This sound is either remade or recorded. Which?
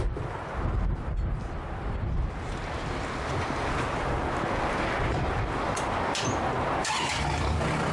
recorded